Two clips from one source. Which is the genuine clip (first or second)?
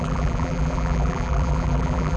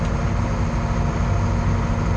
second